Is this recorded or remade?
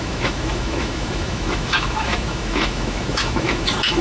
remade